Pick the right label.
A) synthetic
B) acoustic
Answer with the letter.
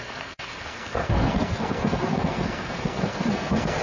A